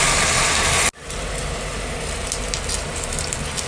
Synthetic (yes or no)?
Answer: no